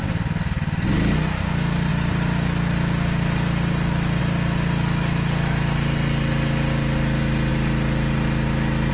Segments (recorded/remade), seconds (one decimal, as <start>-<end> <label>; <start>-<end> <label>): 0.0-8.9 recorded